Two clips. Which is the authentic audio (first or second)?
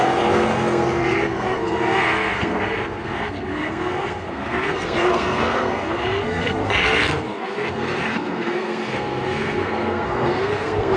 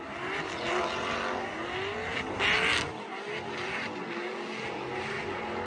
second